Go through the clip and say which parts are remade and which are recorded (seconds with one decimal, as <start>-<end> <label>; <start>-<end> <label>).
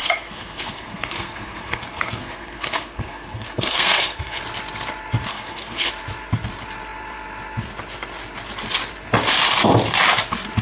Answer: 0.0-4.4 remade; 4.4-5.3 recorded; 5.3-5.9 remade; 5.9-10.6 recorded